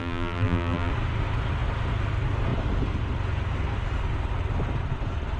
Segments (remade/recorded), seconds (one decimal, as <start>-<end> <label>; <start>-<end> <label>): 0.0-0.9 remade; 0.9-5.4 recorded